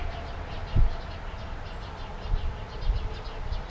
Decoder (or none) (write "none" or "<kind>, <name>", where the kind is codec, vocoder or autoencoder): none